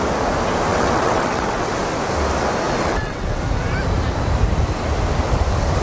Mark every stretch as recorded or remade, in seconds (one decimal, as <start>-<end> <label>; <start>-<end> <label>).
0.0-0.7 recorded; 0.7-1.7 remade; 1.7-2.8 recorded; 2.8-3.4 remade; 3.4-5.8 recorded